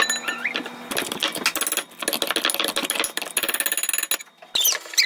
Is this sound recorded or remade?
recorded